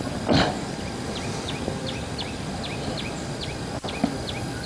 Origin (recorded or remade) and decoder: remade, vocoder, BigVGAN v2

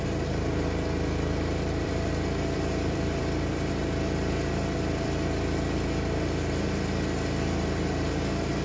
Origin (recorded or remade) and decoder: remade, vocoder, BigVGAN v2